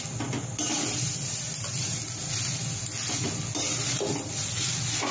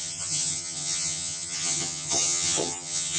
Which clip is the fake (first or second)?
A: second